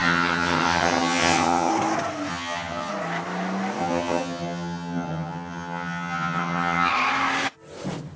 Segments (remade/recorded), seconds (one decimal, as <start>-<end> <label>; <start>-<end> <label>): 0.0-1.7 remade; 1.7-2.3 recorded; 2.3-2.9 remade; 2.9-3.8 recorded; 3.8-6.9 remade; 6.9-8.2 recorded